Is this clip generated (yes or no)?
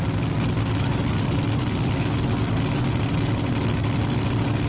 no